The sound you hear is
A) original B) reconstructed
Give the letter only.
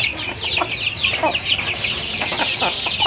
A